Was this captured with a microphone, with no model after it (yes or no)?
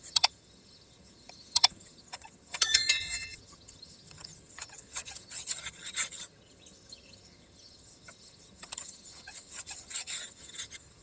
no